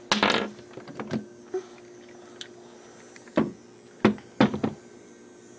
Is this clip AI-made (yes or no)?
no